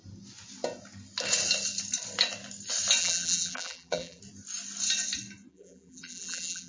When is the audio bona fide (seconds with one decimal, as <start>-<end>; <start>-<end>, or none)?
0.0-3.0; 4.2-5.5